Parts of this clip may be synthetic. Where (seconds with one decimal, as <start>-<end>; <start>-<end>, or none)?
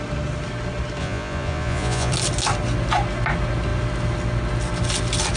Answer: 1.0-2.1